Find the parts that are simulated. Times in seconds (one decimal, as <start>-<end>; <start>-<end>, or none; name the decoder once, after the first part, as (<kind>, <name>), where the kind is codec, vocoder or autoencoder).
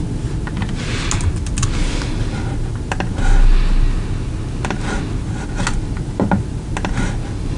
none